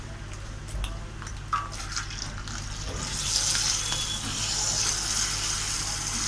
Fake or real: real